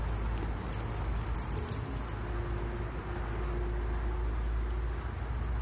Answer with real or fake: real